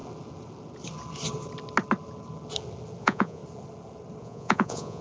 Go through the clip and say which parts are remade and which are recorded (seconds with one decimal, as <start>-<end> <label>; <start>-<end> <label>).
0.0-3.0 recorded; 3.0-3.4 remade; 3.4-4.2 recorded; 4.2-5.0 remade